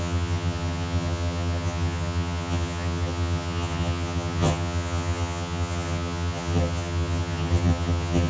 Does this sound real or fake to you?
fake